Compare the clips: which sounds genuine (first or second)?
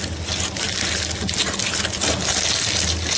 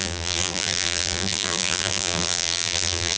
first